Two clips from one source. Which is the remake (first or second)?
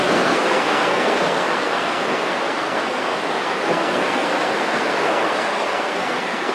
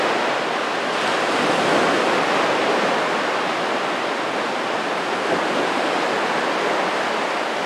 first